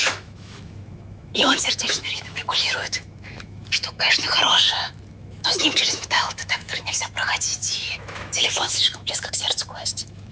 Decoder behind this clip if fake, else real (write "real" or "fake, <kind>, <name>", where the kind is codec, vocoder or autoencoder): fake, autoencoder, DAC-VAE